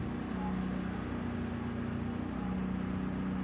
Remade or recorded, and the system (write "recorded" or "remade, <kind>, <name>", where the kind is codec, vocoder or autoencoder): recorded